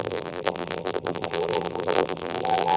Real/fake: fake